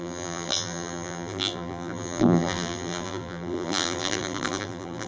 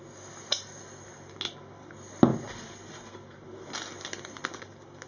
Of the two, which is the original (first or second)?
second